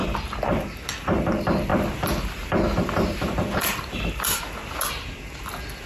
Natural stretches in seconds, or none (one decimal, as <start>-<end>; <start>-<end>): 0.6-1.7; 4.4-5.9